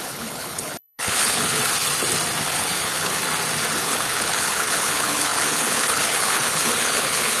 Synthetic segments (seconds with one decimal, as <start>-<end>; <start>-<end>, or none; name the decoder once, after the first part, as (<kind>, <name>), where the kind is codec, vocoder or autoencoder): 0.0-1.6 (codec, HILCodec); 2.4-3.2; 3.8-7.4